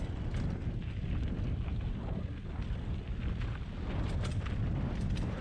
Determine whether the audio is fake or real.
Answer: real